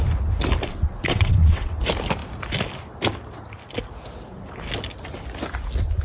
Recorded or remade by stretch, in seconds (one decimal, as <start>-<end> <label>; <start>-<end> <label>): 0.0-0.7 recorded; 0.7-1.8 remade; 1.8-6.0 recorded